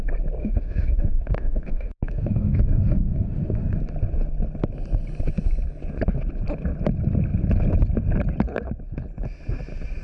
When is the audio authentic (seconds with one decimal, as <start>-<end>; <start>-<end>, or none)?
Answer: 0.0-0.4; 3.8-10.0